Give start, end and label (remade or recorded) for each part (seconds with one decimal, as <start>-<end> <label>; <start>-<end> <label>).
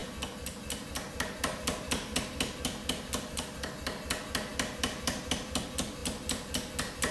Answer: 0.0-7.1 recorded